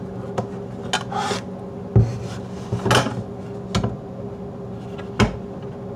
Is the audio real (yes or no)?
yes